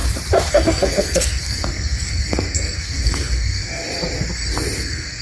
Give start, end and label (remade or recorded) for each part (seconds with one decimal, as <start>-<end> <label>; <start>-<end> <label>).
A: 0.0-0.5 recorded; 0.5-3.8 remade; 3.8-4.8 recorded; 4.8-5.2 remade